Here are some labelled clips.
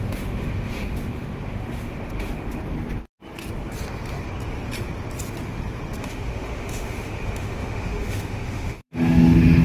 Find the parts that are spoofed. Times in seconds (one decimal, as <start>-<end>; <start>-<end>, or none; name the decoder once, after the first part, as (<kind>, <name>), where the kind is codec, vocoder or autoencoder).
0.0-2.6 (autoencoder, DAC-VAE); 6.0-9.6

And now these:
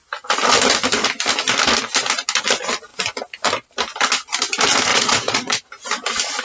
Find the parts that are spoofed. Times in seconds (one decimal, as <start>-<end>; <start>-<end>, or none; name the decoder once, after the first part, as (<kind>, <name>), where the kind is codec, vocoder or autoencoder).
4.9-5.7 (vocoder, Vocos)

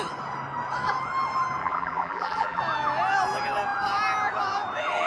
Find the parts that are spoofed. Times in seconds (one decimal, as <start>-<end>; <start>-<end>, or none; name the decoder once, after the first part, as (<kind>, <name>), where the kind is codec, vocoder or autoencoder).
1.6-2.6 (vocoder, BigVGAN v2)

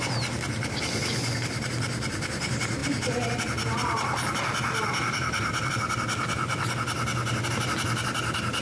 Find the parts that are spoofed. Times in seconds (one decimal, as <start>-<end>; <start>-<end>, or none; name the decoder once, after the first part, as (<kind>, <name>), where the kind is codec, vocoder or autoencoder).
none

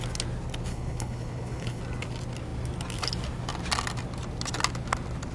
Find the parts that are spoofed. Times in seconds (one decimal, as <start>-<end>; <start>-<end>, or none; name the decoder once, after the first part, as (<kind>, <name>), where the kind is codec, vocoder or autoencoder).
0.7-1.8 (codec, HILCodec)

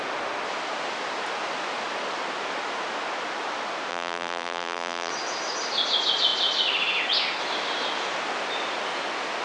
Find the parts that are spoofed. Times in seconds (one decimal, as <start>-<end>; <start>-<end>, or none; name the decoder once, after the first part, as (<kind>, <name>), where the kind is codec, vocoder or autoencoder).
3.9-5.1 (vocoder, BigVGAN v2)